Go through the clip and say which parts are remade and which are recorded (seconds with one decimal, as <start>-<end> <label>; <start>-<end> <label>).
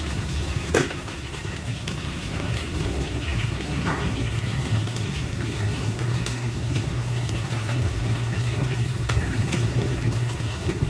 0.0-10.9 remade